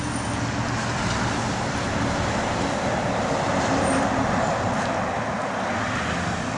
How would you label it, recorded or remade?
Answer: recorded